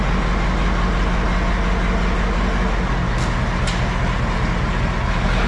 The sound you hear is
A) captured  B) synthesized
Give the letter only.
A